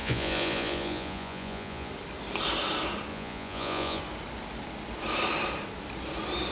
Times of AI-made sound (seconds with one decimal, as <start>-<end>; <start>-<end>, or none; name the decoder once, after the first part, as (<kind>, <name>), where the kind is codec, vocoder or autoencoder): 0.0-1.9 (vocoder, Vocos); 3.1-4.0